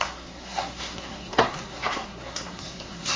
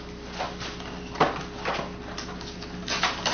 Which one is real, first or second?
second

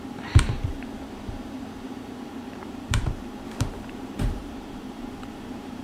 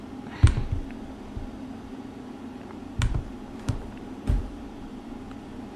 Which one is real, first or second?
second